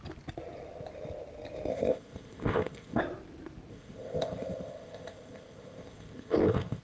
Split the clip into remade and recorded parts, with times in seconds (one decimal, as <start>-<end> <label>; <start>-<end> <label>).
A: 0.0-1.7 recorded; 1.7-3.0 remade; 3.0-3.7 recorded; 3.7-6.8 remade